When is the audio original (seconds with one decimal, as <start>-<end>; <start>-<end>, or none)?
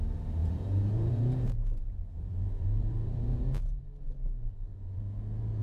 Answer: 0.0-0.4; 3.8-4.7